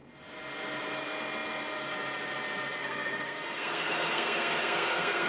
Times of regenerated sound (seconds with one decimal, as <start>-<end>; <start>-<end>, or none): 2.8-5.3